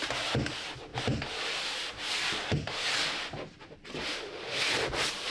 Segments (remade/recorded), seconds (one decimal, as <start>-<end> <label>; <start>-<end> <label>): 0.0-5.3 recorded